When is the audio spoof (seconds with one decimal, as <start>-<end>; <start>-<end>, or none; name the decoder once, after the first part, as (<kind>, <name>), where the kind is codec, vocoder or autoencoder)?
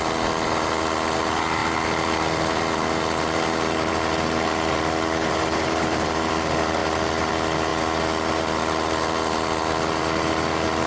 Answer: 5.2-6.3 (vocoder, BigVGAN v2)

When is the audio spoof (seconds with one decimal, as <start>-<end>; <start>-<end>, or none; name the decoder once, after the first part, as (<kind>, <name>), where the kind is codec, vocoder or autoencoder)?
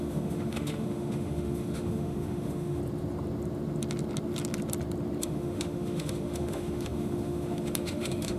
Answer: 0.0-2.8 (autoencoder, DAC-VAE); 5.2-8.4